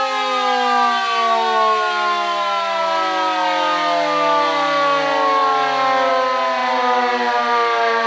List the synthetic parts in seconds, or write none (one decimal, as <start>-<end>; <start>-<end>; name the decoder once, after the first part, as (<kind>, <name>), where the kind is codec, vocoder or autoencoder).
6.6-8.1 (vocoder, BigVGAN v2)